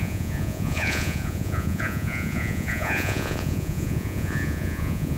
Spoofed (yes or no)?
yes